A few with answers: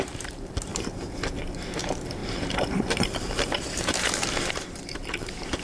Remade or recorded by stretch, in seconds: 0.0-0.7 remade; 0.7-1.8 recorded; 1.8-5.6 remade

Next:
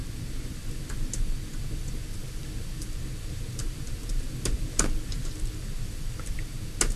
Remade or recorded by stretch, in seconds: 0.0-2.2 recorded; 2.2-6.4 remade; 6.4-7.0 recorded

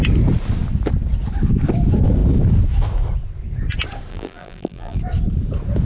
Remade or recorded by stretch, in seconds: 0.0-4.1 recorded; 4.1-5.0 remade; 5.0-5.8 recorded

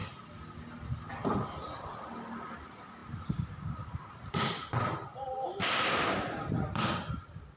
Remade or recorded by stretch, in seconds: 0.0-1.1 recorded; 1.1-5.6 remade; 5.6-6.4 recorded; 6.4-7.6 remade

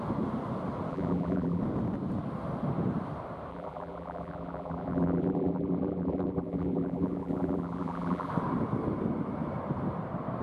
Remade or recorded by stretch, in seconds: 0.0-0.9 recorded; 0.9-1.6 remade; 1.6-3.5 recorded; 3.5-8.3 remade; 8.3-10.4 recorded

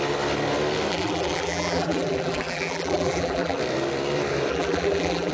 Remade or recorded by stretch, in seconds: 0.0-0.9 recorded; 0.9-3.6 remade; 3.6-4.5 recorded; 4.5-5.3 remade